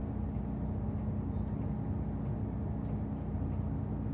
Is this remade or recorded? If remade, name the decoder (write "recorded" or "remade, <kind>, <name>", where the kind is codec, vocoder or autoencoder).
recorded